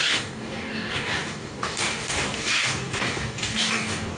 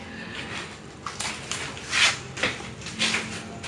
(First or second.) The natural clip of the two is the second